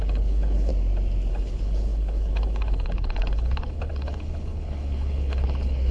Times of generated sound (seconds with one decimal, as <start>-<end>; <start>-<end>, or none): 0.0-0.7; 1.3-5.9